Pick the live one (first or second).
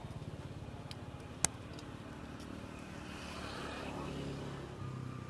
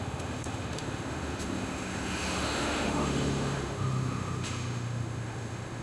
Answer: first